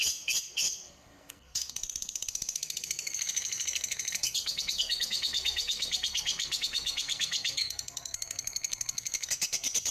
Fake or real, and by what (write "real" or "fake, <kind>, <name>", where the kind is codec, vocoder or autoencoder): fake, codec, SNAC